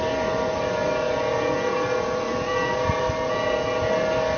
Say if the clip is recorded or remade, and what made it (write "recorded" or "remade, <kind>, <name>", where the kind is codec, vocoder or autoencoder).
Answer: recorded